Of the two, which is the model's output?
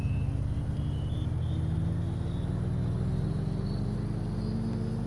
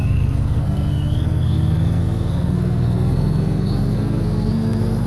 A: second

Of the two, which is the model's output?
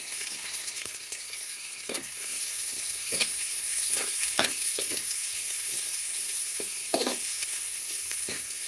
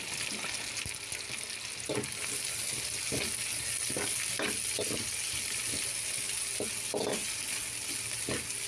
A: first